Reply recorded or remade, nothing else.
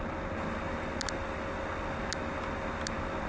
recorded